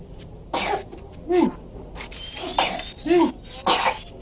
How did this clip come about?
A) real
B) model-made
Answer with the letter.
A